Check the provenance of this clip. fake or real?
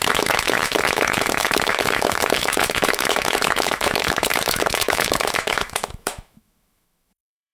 fake